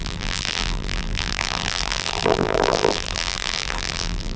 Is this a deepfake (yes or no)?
yes